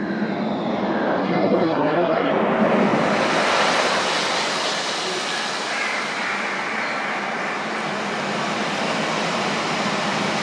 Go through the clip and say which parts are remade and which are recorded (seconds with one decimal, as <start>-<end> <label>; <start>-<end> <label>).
0.0-1.2 recorded; 1.2-2.3 remade; 2.3-10.4 recorded